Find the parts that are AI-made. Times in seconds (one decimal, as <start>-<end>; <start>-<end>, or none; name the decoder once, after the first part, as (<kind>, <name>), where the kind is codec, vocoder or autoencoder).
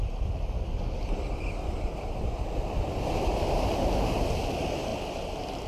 4.9-5.7 (vocoder, BigVGAN v2)